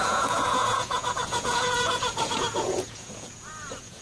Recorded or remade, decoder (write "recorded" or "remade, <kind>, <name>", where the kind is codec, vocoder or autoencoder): remade, vocoder, Vocos